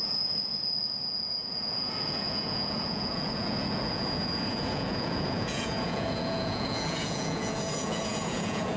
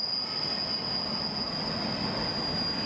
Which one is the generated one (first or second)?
first